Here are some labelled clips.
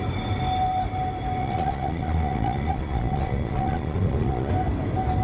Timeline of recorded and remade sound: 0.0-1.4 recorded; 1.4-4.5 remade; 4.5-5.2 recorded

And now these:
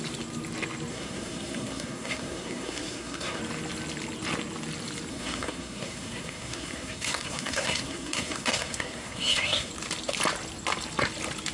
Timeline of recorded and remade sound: 0.0-0.9 recorded; 0.9-3.4 remade; 3.4-5.1 recorded; 5.1-9.7 remade; 9.7-11.5 recorded

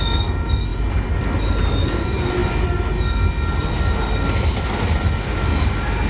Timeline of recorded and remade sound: 0.0-6.1 recorded

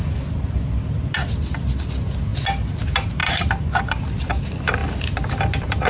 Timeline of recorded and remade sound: 0.0-3.2 recorded; 3.2-4.3 remade; 4.3-4.8 recorded; 4.8-5.9 remade